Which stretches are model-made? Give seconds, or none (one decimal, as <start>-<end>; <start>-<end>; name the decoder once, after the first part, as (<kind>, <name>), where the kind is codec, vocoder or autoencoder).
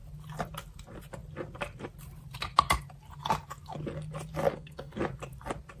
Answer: 4.5-5.0 (codec, SNAC)